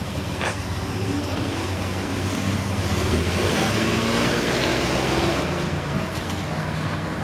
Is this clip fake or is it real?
fake